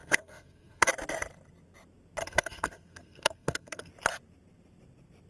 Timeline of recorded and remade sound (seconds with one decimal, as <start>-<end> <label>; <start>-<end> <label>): 0.0-0.9 remade; 0.9-2.2 recorded; 2.2-3.9 remade; 3.9-5.3 recorded